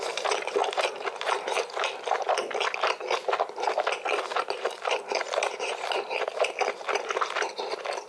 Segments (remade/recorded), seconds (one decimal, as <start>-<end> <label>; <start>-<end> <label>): 0.0-8.1 recorded